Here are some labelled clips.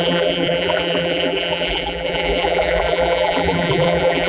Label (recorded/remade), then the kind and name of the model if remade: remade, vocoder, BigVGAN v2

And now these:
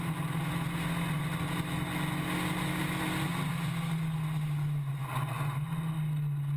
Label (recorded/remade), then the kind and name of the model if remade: recorded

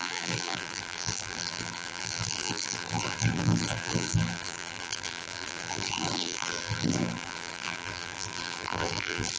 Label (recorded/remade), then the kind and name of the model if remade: remade, vocoder, BigVGAN v2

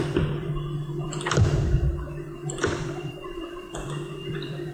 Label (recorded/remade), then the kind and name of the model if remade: remade, vocoder, BigVGAN v2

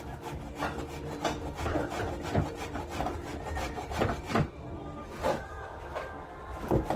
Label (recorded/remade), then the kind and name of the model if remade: recorded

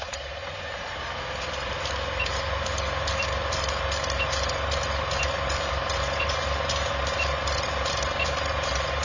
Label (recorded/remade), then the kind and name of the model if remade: remade, vocoder, BigVGAN v2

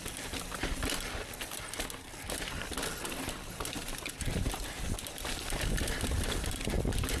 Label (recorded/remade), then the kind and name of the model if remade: recorded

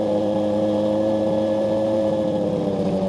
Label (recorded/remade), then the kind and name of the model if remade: remade, vocoder, BigVGAN v2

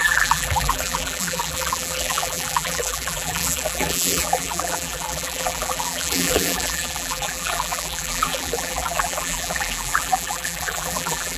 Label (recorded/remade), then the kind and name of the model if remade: remade, vocoder, BigVGAN v2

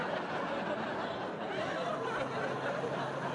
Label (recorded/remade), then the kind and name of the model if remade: recorded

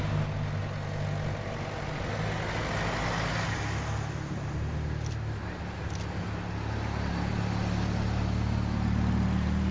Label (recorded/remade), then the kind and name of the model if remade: recorded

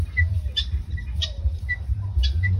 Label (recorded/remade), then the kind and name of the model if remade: remade, vocoder, BigVGAN v2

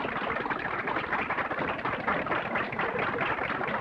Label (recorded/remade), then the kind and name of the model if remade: recorded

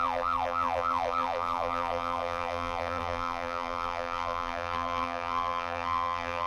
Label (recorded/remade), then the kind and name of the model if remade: remade, vocoder, BigVGAN v2